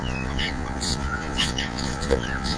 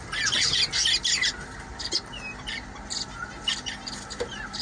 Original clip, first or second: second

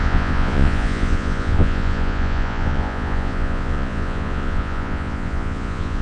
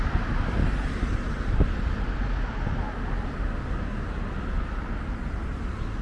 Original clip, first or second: second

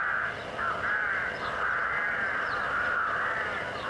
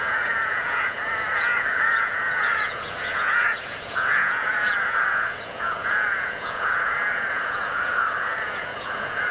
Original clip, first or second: first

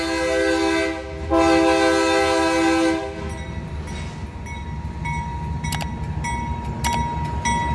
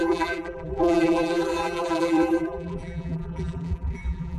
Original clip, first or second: first